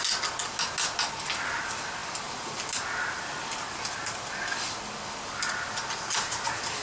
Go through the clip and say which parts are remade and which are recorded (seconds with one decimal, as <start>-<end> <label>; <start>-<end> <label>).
0.0-6.8 recorded